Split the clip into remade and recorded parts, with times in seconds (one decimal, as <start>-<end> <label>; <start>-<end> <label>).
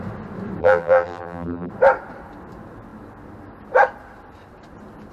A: 0.0-0.6 recorded; 0.6-1.7 remade; 1.7-5.1 recorded